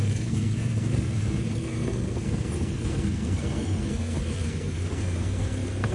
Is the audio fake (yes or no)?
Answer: yes